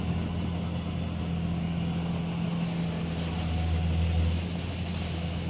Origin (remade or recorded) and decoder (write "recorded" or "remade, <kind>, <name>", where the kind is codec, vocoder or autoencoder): recorded